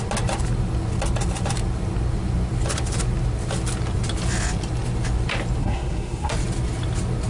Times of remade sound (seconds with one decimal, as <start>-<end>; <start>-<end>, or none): 5.6-6.3